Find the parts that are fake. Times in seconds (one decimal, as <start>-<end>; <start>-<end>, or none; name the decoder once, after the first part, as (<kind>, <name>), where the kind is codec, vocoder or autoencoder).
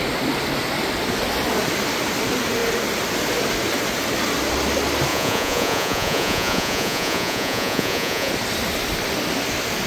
5.1-8.3 (vocoder, Vocos)